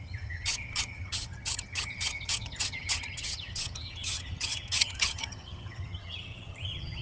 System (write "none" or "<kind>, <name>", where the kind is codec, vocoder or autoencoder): vocoder, HiFi-GAN